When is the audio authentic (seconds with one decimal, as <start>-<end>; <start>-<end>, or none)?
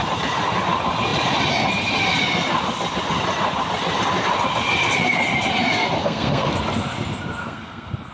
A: 0.0-6.0; 6.5-7.4